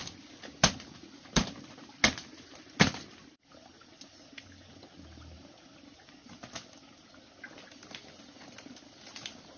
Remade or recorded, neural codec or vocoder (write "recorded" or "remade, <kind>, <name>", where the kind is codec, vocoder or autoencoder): recorded